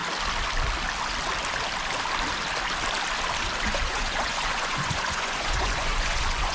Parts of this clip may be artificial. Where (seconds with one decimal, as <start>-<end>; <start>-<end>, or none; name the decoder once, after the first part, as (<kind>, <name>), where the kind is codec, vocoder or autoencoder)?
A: 3.6-6.5 (vocoder, Vocos)